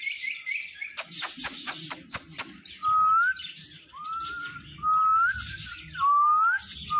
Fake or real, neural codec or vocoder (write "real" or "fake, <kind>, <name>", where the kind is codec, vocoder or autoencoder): real